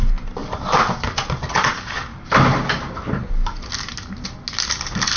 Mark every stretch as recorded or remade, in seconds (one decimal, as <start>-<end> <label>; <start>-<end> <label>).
0.0-5.2 recorded